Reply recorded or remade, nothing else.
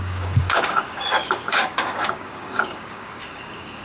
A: remade